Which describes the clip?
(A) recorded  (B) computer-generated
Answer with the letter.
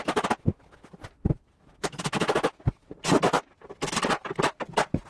A